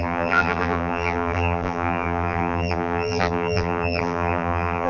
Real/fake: fake